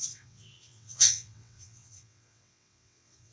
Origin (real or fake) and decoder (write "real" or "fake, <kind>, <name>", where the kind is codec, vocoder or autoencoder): fake, vocoder, WaveNeXt